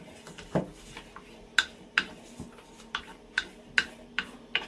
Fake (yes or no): no